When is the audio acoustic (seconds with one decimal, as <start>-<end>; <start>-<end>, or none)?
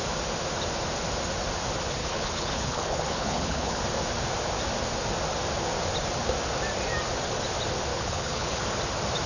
0.0-2.0; 3.8-7.9; 8.6-9.3